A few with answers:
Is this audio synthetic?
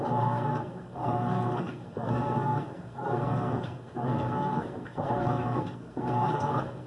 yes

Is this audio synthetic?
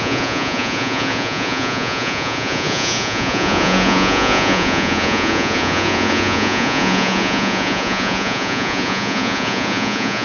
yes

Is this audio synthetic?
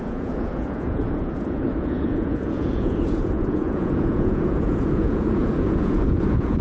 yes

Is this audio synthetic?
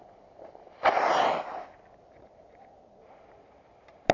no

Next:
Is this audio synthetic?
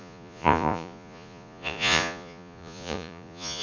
yes